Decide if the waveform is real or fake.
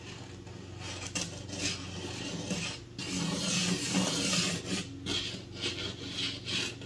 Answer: real